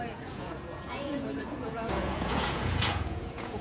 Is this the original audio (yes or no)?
no